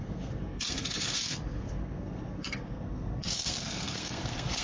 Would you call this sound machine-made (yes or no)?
yes